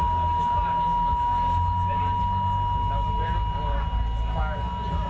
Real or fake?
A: real